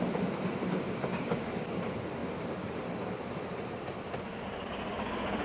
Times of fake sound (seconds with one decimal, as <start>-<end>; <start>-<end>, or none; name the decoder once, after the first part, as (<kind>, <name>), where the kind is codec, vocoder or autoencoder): 1.1-1.8 (codec, DAC)